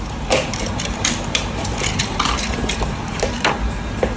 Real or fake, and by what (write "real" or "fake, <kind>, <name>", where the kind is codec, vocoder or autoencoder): fake, vocoder, BigVGAN v2